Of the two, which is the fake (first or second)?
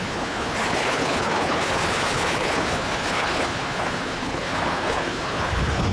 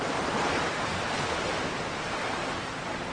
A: first